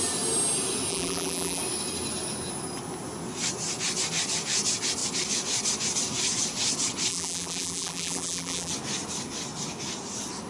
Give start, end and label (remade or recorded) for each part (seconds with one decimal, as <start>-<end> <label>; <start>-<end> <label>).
0.0-0.9 recorded; 0.9-1.6 remade; 1.6-7.1 recorded; 7.1-8.7 remade; 8.7-10.5 recorded